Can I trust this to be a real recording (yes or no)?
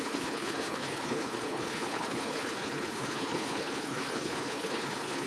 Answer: no